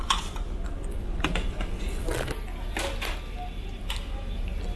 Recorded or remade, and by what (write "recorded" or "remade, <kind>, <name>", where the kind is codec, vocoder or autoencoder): recorded